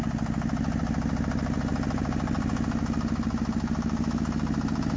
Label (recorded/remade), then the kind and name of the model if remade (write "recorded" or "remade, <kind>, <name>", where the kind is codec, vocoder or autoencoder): recorded